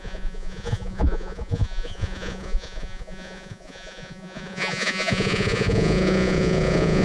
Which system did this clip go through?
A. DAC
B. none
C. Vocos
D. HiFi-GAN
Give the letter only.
C